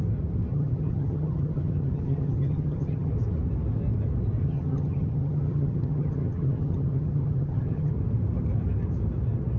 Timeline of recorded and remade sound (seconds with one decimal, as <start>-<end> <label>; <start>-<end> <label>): 0.0-0.5 recorded; 0.5-3.1 remade; 3.1-4.4 recorded; 4.4-7.9 remade; 7.9-9.6 recorded